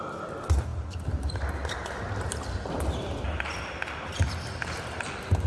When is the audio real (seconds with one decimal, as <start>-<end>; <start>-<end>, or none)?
0.0-5.5